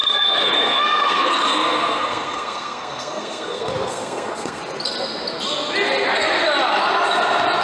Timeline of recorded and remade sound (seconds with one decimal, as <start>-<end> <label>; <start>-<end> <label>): 0.0-4.6 remade; 4.6-7.6 recorded